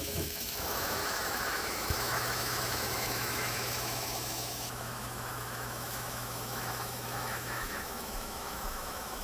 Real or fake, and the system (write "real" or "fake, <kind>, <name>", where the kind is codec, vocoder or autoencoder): fake, autoencoder, DAC-VAE